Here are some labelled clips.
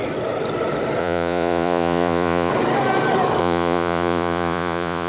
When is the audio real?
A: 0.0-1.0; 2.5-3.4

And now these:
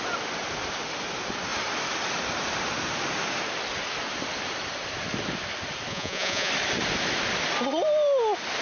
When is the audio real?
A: 0.0-5.9; 6.5-8.6

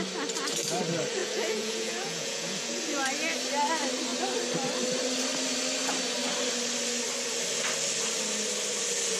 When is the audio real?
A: 0.0-1.2; 2.7-9.2

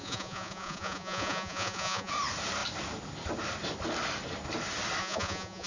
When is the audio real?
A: 2.1-5.0

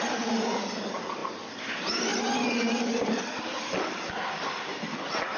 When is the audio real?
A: 0.0-5.4